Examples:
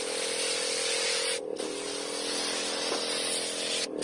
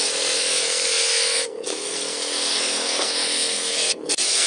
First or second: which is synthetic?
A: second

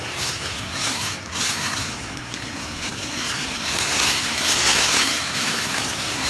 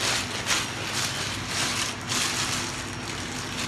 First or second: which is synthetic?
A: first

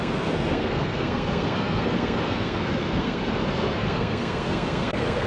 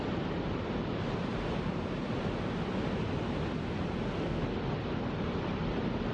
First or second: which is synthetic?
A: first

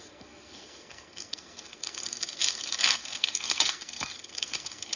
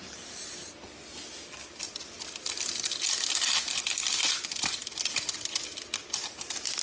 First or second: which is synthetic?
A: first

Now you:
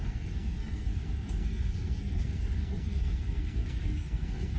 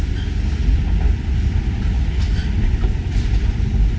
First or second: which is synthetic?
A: first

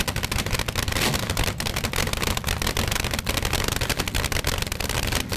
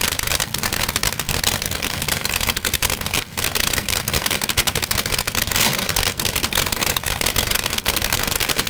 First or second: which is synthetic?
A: second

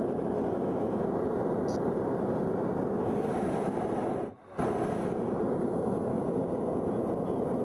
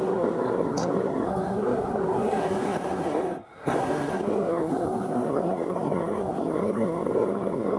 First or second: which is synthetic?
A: second